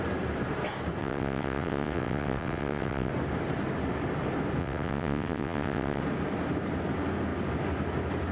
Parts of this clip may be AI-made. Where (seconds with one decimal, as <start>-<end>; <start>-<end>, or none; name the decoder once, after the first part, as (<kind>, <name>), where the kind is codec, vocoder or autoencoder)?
1.0-3.1 (vocoder, WaveNeXt); 4.6-6.0